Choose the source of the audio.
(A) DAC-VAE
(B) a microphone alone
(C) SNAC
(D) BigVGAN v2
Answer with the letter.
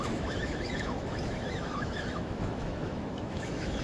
A